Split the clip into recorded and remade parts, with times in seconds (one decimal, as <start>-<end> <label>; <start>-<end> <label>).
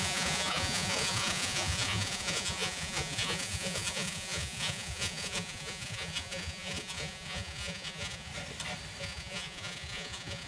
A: 0.0-8.3 remade; 8.3-9.0 recorded; 9.0-10.5 remade